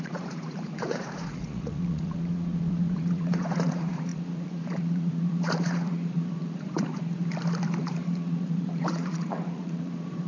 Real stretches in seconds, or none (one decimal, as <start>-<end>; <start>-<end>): 7.2-7.8